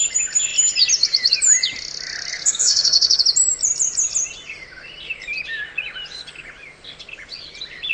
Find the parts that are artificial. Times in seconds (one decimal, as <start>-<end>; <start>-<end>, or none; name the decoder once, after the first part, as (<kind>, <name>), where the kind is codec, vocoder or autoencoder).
2.3-3.2 (codec, SNAC)